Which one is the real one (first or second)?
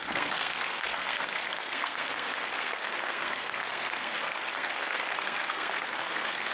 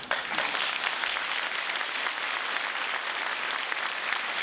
second